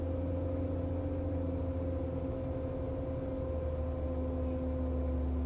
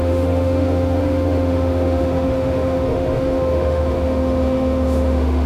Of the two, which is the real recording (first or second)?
first